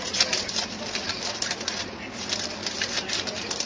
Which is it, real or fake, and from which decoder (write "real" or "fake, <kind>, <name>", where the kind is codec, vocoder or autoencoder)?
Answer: real